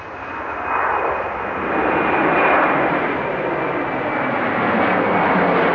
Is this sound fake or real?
real